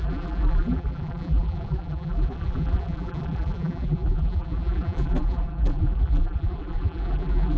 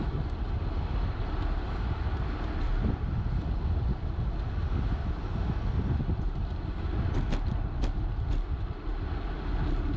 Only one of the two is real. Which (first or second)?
second